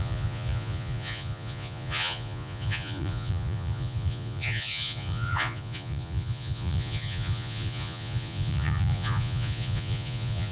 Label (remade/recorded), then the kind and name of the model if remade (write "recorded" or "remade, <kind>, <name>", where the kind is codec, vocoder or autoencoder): remade, vocoder, Vocos